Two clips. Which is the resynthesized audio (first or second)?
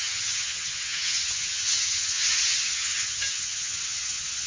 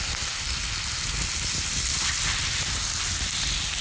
first